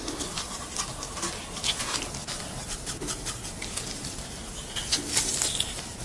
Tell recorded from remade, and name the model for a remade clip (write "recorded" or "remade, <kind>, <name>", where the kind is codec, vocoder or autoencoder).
recorded